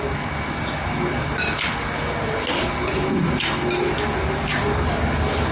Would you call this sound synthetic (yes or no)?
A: no